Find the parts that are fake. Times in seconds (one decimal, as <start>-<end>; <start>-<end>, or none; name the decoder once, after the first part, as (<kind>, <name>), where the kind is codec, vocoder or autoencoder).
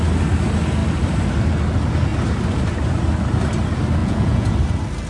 4.0-4.5 (vocoder, Vocos)